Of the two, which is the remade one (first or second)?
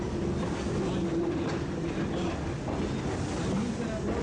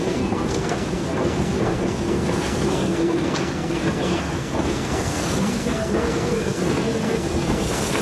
second